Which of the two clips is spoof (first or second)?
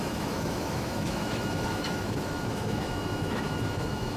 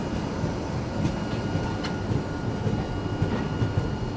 first